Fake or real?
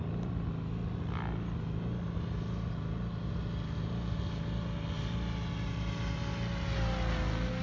real